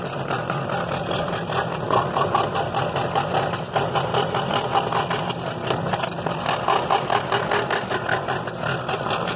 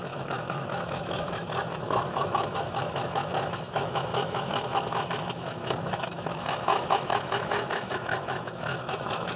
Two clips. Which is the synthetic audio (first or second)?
second